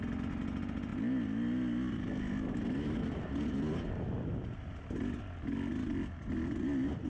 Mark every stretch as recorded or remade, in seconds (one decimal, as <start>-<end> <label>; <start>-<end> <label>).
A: 0.0-7.1 recorded